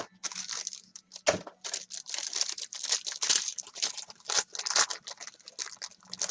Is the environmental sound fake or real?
real